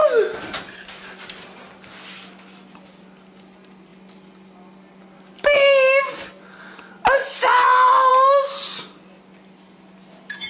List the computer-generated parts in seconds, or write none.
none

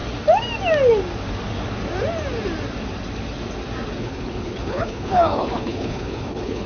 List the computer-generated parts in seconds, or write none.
4.0-6.7 (codec, HILCodec)

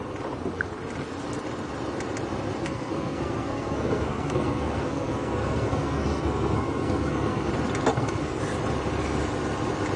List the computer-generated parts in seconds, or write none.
2.6-7.5 (codec, SNAC); 7.9-8.4

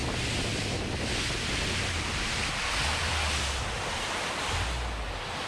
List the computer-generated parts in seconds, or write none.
none

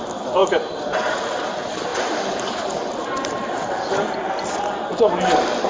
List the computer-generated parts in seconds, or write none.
0.0-3.4 (vocoder, BigVGAN v2)

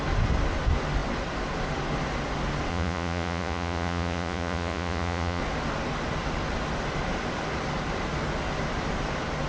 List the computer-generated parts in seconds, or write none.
2.7-5.4 (vocoder, Vocos)